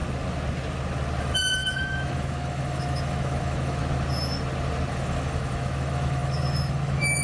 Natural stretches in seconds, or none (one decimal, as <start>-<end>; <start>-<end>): 0.0-1.2; 3.8-4.9